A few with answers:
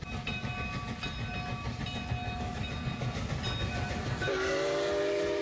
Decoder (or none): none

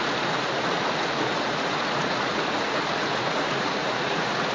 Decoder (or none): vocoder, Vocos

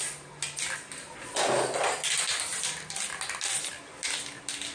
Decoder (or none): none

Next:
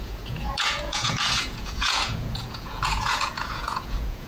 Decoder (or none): vocoder, Vocos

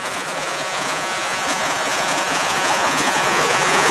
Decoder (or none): vocoder, Vocos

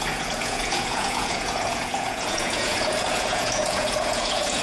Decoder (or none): vocoder, Vocos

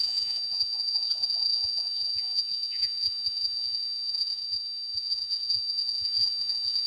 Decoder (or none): vocoder, Vocos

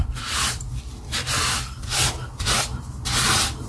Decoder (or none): none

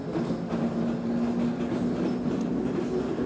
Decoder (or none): none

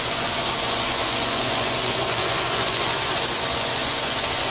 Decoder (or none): vocoder, Vocos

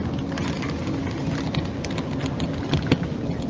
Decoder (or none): none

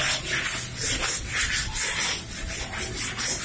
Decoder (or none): none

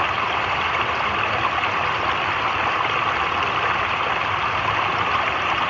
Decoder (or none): none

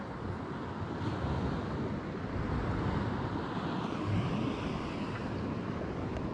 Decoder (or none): none